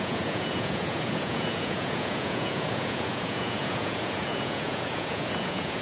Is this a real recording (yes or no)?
no